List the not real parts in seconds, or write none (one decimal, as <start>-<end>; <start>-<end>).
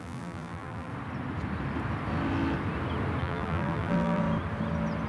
0.0-0.9; 3.2-4.2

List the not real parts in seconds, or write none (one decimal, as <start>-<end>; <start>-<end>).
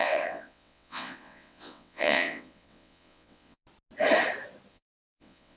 0.0-3.6; 4.7-5.6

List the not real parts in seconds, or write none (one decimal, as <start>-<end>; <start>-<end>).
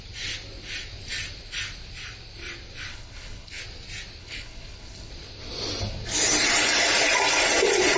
2.9-3.6; 4.2-5.1